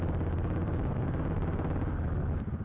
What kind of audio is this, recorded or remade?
recorded